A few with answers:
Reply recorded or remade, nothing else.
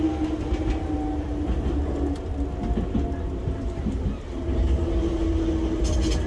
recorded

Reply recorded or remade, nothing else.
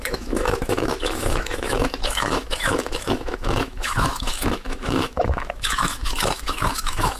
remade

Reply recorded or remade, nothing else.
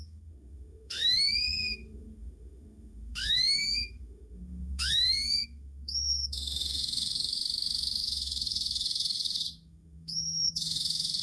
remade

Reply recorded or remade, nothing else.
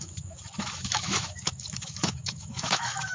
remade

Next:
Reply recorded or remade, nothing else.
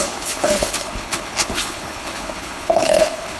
remade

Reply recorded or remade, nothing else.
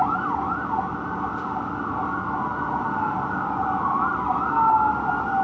recorded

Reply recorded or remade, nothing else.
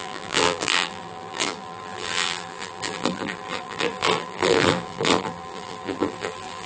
remade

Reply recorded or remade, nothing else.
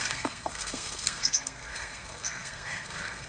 remade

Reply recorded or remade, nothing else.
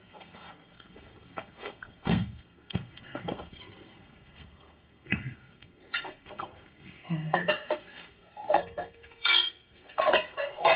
remade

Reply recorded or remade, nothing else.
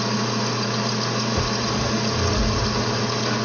recorded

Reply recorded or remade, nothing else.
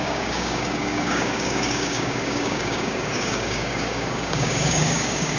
remade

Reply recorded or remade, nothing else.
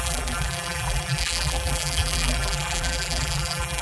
remade